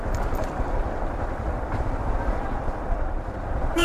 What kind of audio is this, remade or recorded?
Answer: recorded